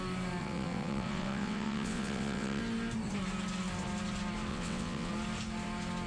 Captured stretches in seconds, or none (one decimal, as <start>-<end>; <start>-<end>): 0.0-0.4; 2.6-4.5; 5.1-6.1